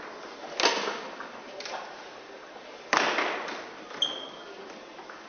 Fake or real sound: real